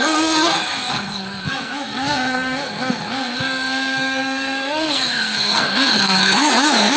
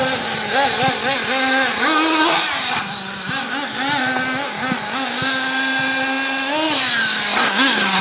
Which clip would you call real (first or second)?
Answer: second